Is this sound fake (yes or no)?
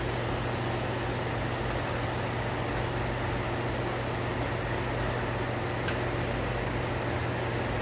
no